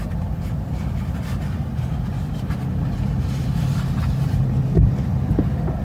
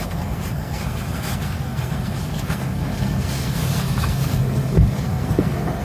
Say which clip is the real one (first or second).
first